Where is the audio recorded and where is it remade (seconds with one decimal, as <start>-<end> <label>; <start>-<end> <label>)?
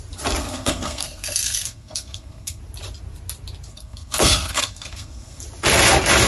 0.0-0.4 recorded; 0.4-2.6 remade; 2.6-3.7 recorded; 3.7-5.4 remade; 5.4-6.3 recorded